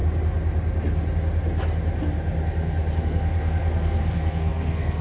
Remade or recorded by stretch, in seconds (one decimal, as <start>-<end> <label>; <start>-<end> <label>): 0.0-3.0 recorded; 3.0-5.0 remade